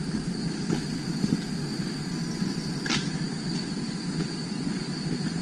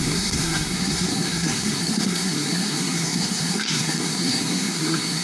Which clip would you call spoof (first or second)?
second